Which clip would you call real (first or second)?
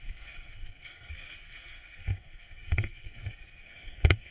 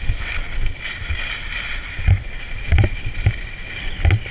second